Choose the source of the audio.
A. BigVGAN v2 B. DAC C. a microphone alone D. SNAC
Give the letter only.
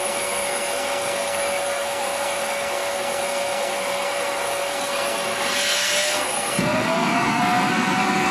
D